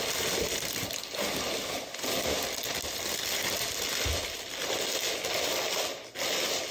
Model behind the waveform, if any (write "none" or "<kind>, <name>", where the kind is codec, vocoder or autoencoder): none